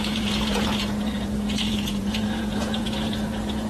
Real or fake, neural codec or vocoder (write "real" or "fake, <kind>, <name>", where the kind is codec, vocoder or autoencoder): fake, vocoder, Vocos